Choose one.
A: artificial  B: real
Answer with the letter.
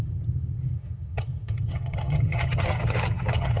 A